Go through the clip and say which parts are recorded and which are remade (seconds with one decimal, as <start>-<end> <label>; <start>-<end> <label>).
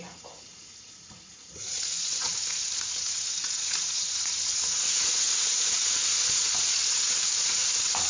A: 0.0-8.1 remade